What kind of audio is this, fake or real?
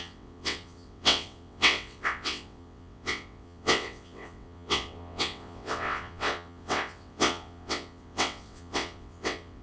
fake